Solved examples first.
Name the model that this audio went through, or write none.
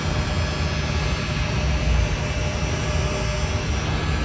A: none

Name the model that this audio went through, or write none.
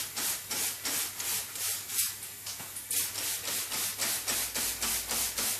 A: none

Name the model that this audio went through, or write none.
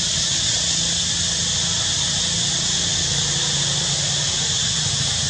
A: none